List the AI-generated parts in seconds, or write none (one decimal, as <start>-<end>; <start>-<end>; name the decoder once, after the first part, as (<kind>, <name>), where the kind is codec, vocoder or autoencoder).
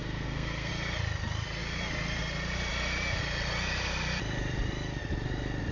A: 0.0-0.7 (codec, SNAC)